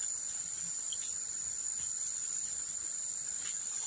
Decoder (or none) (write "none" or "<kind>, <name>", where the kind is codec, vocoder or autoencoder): none